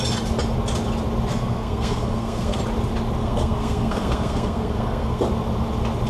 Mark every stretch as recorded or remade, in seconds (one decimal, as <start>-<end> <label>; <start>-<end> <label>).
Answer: 0.0-1.3 recorded; 1.3-2.6 remade; 2.6-3.2 recorded; 3.2-5.2 remade; 5.2-6.1 recorded